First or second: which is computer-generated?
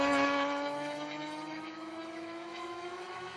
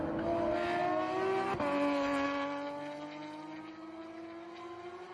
first